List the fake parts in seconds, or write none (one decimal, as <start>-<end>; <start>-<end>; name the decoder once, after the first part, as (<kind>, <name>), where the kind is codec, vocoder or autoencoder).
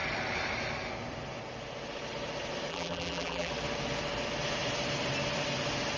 2.7-3.5 (vocoder, BigVGAN v2)